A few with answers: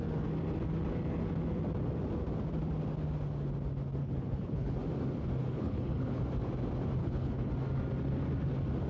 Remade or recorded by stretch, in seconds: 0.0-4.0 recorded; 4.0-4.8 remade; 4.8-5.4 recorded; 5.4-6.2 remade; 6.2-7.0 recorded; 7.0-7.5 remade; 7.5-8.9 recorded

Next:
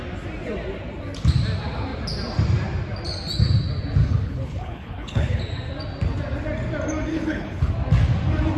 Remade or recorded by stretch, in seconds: 0.0-4.0 recorded; 4.0-5.4 remade; 5.4-7.1 recorded; 7.1-7.7 remade; 7.7-8.6 recorded

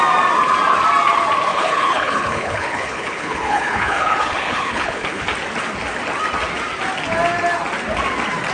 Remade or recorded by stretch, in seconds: 0.0-1.5 recorded; 1.5-5.2 remade; 5.2-8.5 recorded

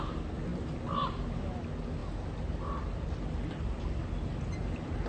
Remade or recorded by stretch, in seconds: 0.0-5.1 recorded

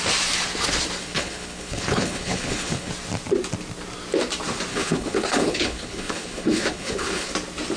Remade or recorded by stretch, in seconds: 0.0-1.0 recorded; 1.0-2.9 remade; 2.9-4.7 recorded; 4.7-7.3 remade; 7.3-7.8 recorded

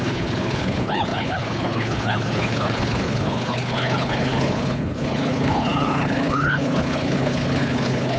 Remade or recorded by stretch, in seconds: 0.0-8.2 remade